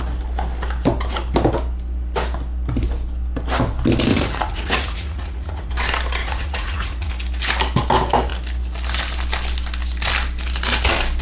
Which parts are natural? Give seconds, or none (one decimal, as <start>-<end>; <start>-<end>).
0.0-4.1; 5.7-6.2; 7.1-11.2